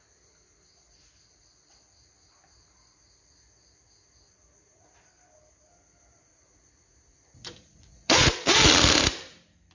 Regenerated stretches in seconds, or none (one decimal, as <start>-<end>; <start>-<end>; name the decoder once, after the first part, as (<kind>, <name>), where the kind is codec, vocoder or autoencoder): 7.1-8.6 (vocoder, Vocos)